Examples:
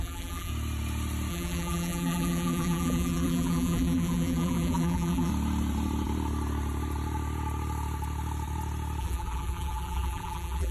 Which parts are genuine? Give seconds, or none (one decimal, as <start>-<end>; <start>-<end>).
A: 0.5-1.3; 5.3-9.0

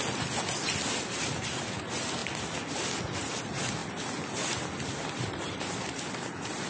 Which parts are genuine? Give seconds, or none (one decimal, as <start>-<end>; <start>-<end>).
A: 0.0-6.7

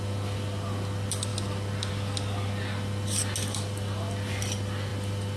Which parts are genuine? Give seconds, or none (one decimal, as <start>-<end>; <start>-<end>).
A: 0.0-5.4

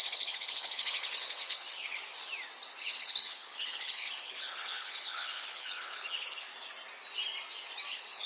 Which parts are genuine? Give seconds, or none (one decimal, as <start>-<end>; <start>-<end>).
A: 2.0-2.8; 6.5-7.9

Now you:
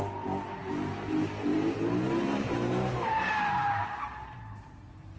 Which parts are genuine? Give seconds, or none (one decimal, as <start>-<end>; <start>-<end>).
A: 0.0-0.6; 2.9-5.2

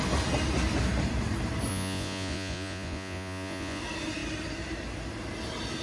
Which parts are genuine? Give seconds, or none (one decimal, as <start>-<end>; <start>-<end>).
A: 0.0-1.7; 3.8-5.8